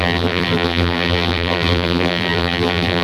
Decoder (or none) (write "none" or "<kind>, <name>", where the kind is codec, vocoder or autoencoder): vocoder, BigVGAN v2